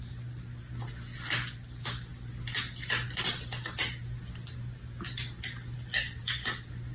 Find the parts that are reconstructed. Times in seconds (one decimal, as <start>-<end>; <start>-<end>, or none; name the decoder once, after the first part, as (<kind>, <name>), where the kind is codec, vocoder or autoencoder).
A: none